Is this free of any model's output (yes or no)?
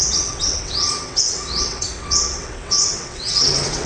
no